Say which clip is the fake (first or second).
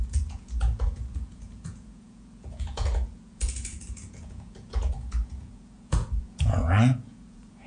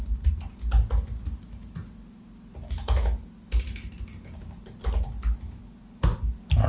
first